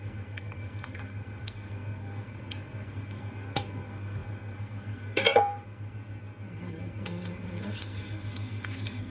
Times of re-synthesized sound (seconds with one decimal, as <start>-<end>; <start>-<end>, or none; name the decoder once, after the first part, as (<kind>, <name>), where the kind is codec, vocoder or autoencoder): 0.0-9.1 (codec, SNAC)